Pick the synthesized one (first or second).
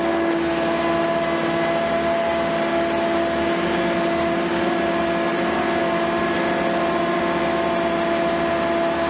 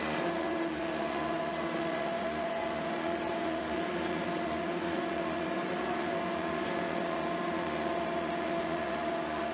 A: second